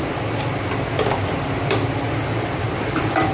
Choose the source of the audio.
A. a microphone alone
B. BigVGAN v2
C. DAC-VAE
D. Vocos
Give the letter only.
A